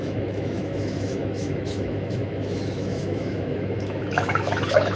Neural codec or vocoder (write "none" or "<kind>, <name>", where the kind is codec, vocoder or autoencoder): autoencoder, DAC-VAE